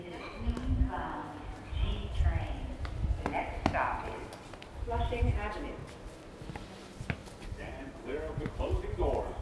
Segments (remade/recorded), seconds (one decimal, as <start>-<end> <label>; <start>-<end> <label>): 0.0-7.2 recorded; 7.2-8.8 remade; 8.8-9.4 recorded